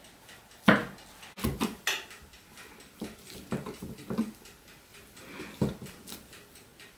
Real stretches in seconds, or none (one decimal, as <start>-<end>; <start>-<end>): 0.0-7.0